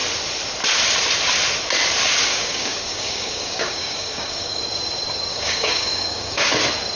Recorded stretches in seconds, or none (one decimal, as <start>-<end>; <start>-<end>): 0.0-2.3; 4.6-5.3; 6.5-7.0